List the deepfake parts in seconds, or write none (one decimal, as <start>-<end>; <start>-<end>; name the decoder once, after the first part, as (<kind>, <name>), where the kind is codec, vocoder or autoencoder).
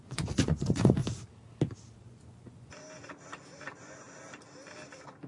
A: 0.0-1.0 (vocoder, Vocos); 2.0-2.8; 3.8-4.2